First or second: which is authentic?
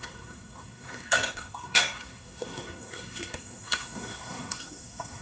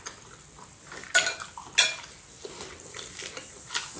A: second